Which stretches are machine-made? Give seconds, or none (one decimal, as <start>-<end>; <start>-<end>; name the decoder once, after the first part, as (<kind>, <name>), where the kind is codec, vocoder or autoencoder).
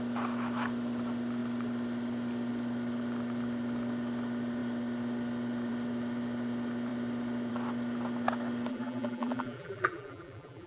8.7-10.7 (vocoder, BigVGAN v2)